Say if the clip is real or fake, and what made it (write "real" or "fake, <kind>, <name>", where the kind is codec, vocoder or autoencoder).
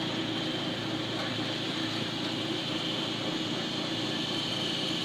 real